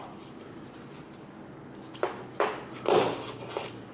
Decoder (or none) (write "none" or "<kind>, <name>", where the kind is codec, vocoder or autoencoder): none